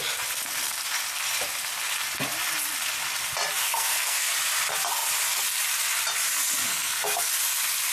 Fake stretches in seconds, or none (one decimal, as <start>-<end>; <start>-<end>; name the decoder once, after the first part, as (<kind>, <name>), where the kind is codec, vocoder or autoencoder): 3.6-4.3 (codec, SNAC); 6.7-7.3